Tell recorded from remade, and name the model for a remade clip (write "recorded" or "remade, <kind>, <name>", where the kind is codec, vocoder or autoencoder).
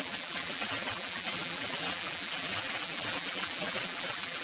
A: remade, vocoder, BigVGAN v2